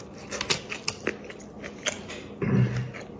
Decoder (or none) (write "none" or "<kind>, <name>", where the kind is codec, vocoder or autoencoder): none